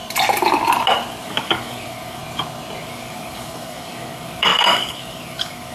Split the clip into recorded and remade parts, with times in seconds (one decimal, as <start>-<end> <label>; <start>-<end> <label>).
0.0-1.2 recorded; 1.2-2.2 remade; 2.2-2.8 recorded; 2.8-5.7 remade